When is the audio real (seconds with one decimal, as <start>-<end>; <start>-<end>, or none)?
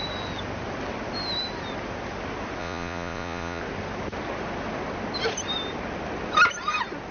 0.0-2.6; 3.6-7.1